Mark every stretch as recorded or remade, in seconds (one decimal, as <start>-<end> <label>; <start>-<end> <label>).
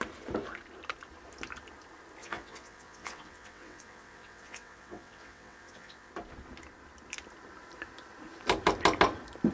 0.0-2.2 recorded; 2.2-6.1 remade; 6.1-9.5 recorded